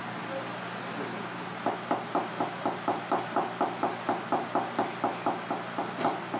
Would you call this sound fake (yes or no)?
no